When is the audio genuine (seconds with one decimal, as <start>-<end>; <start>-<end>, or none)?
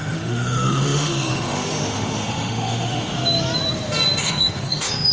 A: 3.1-4.2